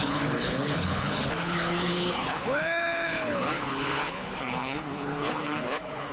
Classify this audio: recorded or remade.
remade